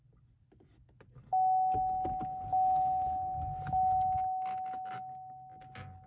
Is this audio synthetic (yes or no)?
no